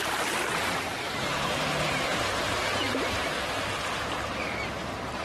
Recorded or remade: remade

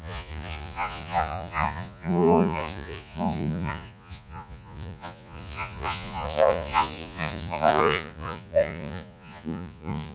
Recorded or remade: remade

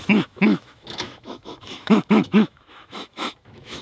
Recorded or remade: remade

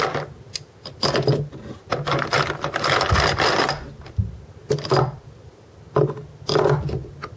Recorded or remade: recorded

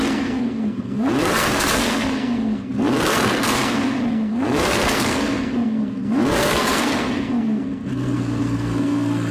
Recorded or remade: remade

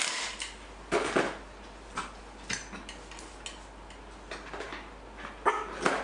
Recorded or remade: recorded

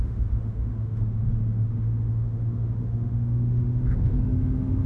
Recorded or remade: remade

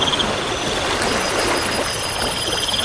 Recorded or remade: recorded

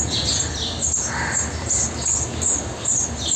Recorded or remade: recorded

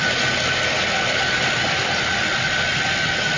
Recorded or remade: recorded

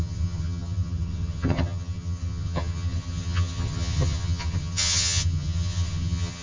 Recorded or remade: remade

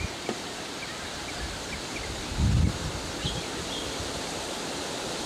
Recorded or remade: recorded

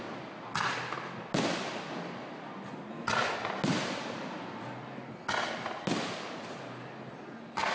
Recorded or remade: recorded